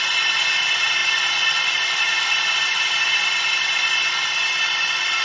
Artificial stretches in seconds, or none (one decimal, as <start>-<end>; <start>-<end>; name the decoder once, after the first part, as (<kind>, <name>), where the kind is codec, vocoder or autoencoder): none